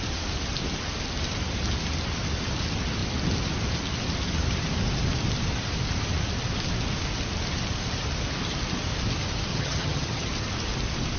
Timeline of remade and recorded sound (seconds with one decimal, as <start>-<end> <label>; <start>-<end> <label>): 0.0-9.5 recorded; 9.5-10.3 remade; 10.3-11.2 recorded